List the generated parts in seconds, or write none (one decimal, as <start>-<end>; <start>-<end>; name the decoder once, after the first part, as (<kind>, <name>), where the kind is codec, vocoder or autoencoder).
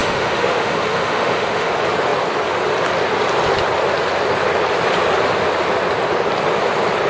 0.0-1.7 (autoencoder, DAC-VAE)